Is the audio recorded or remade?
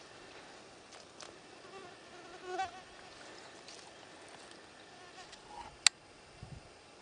recorded